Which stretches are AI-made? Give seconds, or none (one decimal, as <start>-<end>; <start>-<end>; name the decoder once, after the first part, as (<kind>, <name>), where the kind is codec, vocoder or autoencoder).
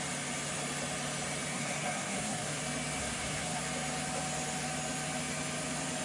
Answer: 1.5-2.6 (codec, SNAC); 3.0-3.6